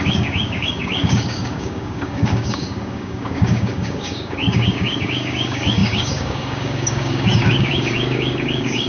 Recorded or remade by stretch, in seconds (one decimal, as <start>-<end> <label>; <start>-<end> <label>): 0.0-8.9 remade

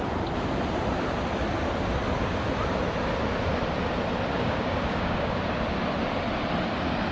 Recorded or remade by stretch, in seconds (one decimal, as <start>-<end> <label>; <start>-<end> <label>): 0.0-4.3 recorded; 4.3-5.4 remade; 5.4-7.1 recorded

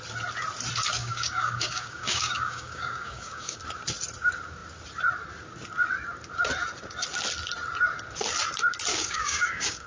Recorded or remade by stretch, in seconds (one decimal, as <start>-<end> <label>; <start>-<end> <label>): 0.0-1.0 recorded; 1.0-3.6 remade; 3.6-8.9 recorded; 8.9-9.9 remade

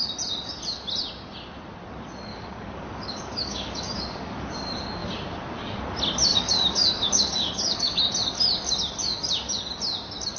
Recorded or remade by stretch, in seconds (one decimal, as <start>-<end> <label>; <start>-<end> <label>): 0.0-2.3 recorded; 2.3-4.5 remade; 4.5-6.3 recorded; 6.3-8.0 remade; 8.0-10.4 recorded

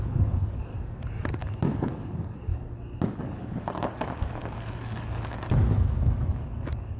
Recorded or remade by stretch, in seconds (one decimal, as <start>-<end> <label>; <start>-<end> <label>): 0.0-0.7 remade; 0.7-1.3 recorded; 1.3-2.5 remade; 2.5-3.2 recorded; 3.2-7.0 remade

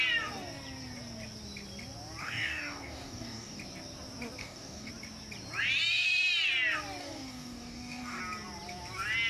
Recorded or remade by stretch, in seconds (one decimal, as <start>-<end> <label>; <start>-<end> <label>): 0.0-2.2 recorded; 2.2-3.6 remade; 3.6-4.4 recorded; 4.4-4.9 remade; 4.9-7.0 recorded; 7.0-8.2 remade; 8.2-9.3 recorded